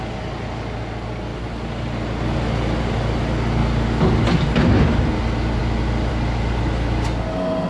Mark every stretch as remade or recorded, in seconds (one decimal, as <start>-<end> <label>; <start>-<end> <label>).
0.0-7.7 recorded